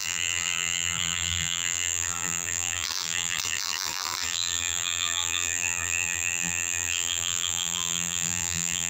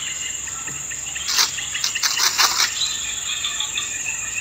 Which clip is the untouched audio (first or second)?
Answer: second